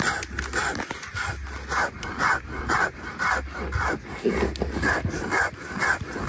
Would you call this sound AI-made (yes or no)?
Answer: no